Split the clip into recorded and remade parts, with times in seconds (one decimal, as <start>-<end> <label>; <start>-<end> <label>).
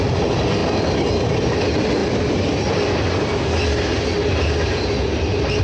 0.0-5.6 recorded